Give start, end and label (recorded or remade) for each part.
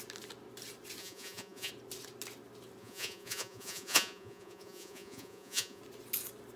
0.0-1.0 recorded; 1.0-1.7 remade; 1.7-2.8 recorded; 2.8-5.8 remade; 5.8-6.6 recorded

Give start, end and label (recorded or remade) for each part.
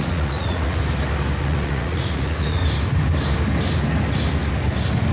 0.0-0.8 remade; 0.8-1.4 recorded; 1.4-2.6 remade; 2.6-5.1 recorded